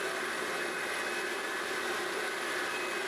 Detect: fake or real real